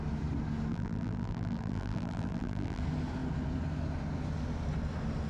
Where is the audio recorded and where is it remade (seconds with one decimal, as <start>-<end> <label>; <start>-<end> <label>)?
0.0-0.7 recorded; 0.7-2.8 remade; 2.8-5.3 recorded